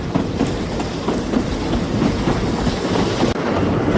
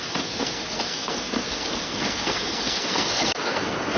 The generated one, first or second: second